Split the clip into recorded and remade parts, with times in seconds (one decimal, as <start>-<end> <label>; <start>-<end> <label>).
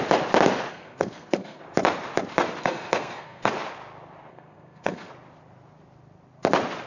0.0-0.7 recorded; 0.7-1.6 remade; 1.6-2.6 recorded; 2.6-3.5 remade; 3.5-4.3 recorded; 4.3-5.1 remade; 5.1-6.9 recorded